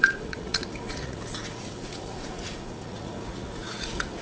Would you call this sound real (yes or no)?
no